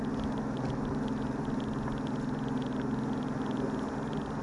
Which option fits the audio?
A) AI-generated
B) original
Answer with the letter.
B